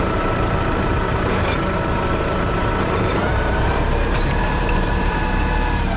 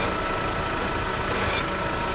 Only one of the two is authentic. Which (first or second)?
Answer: second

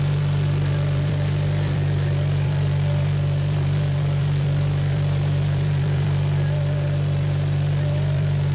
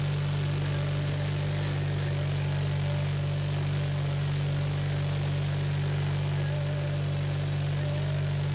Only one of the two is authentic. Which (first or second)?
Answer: second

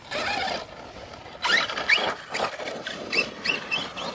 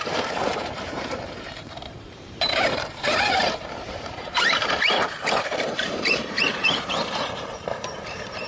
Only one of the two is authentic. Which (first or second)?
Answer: first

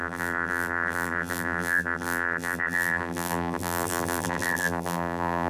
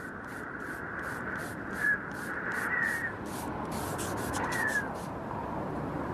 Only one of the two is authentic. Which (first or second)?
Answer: second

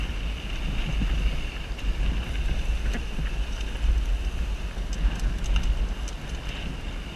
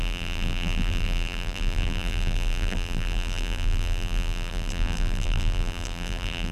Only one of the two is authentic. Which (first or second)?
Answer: first